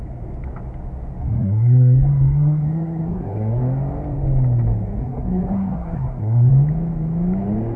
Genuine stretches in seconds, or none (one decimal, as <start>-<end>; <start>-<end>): 0.0-1.2; 3.6-5.0; 6.5-7.8